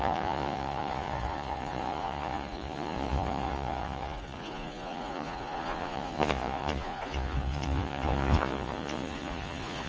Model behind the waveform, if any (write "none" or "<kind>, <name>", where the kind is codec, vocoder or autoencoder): vocoder, Vocos